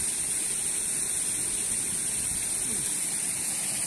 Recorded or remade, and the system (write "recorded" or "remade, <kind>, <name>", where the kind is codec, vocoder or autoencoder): recorded